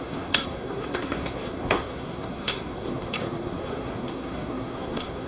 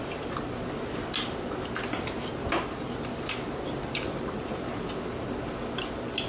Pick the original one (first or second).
second